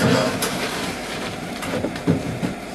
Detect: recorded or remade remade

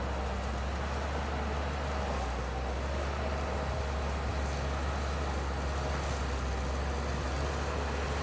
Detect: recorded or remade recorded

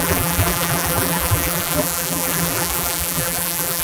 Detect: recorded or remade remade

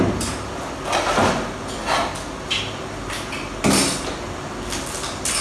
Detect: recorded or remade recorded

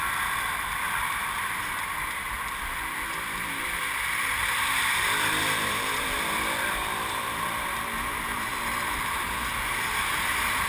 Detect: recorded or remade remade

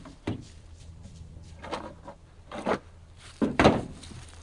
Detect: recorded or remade remade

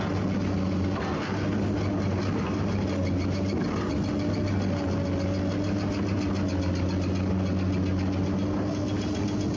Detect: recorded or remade recorded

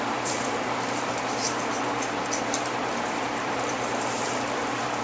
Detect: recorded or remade remade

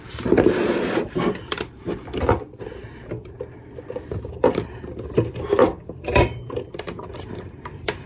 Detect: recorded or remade remade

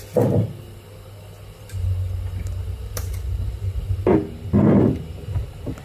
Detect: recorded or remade recorded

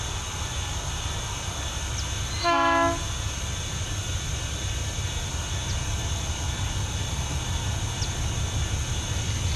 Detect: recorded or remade recorded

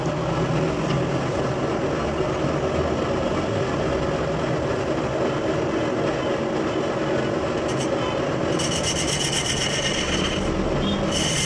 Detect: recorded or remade recorded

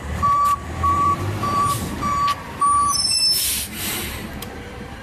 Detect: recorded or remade remade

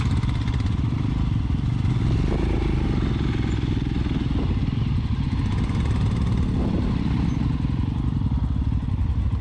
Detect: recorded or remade recorded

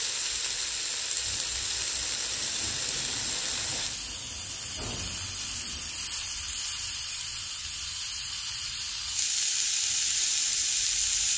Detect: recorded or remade recorded